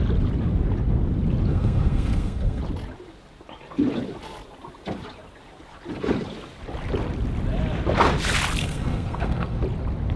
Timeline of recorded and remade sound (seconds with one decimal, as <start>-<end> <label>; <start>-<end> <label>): 0.0-1.5 recorded; 1.5-2.6 remade; 2.6-8.6 recorded; 8.6-9.6 remade; 9.6-10.2 recorded